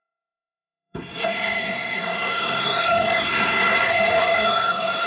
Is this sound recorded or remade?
remade